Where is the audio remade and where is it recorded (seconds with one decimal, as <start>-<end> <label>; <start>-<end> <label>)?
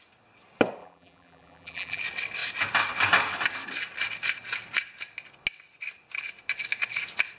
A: 0.0-0.8 recorded; 0.8-2.0 remade; 2.0-7.4 recorded